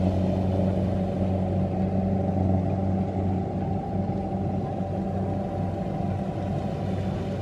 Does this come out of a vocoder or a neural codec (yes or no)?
no